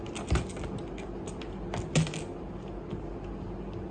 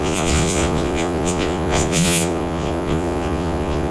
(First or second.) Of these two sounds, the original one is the first